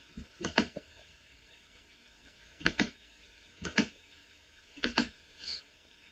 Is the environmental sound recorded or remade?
remade